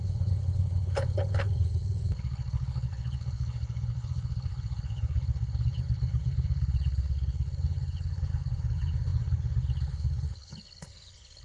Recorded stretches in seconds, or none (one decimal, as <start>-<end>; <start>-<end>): none